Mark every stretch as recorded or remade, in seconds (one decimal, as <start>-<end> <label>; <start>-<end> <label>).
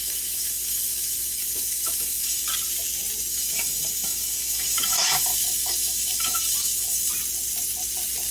0.0-2.5 remade; 2.5-3.3 recorded; 3.3-7.1 remade; 7.1-8.3 recorded